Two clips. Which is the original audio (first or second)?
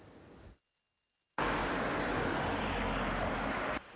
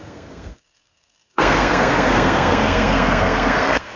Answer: first